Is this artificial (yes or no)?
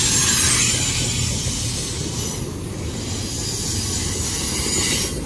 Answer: no